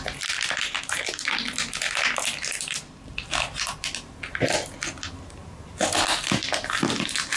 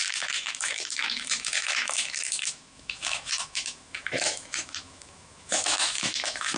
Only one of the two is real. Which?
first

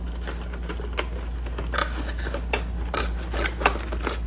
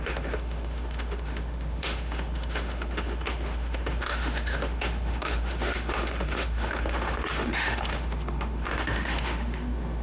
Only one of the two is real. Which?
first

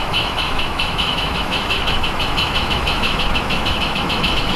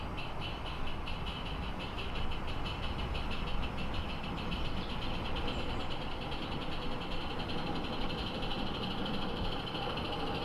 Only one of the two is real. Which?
second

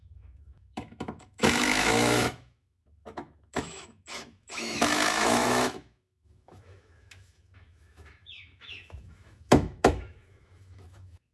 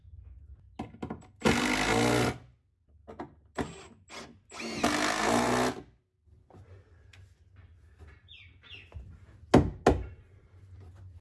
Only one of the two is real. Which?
second